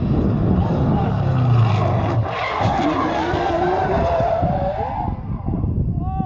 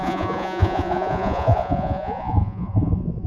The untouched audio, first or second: first